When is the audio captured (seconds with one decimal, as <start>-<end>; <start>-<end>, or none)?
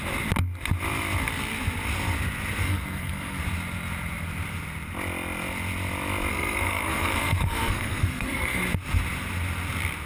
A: 0.0-2.6; 3.4-6.3; 8.6-10.1